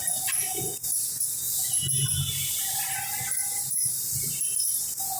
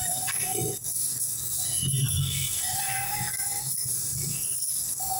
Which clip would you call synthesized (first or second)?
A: second